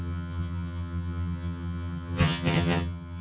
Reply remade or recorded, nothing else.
remade